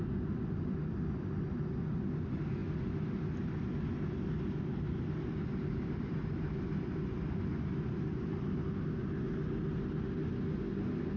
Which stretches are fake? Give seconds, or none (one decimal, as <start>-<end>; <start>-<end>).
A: none